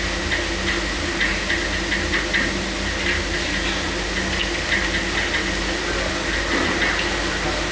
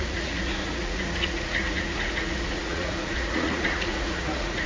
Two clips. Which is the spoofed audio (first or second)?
second